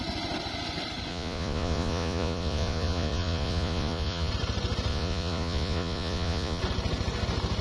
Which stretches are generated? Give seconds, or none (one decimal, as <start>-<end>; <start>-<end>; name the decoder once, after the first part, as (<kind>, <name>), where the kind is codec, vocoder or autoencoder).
1.1-4.3 (vocoder, Vocos); 4.9-6.6